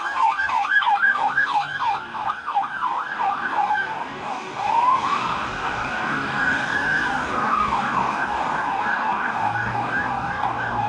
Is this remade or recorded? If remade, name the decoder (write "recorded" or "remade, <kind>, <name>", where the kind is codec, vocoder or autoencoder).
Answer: remade, codec, DAC